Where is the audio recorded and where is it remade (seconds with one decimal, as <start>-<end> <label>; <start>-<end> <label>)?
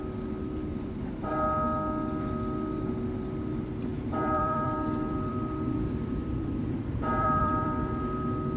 0.0-0.7 recorded; 0.7-1.3 remade; 1.3-3.9 recorded; 3.9-8.0 remade; 8.0-8.6 recorded